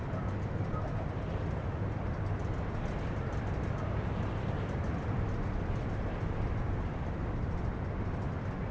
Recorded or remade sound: recorded